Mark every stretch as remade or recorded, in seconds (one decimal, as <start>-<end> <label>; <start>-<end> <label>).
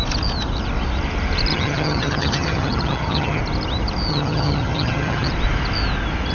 0.0-1.5 recorded; 1.5-3.4 remade; 3.4-4.1 recorded; 4.1-5.3 remade; 5.3-6.3 recorded